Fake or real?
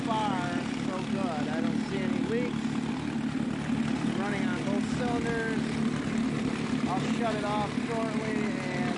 real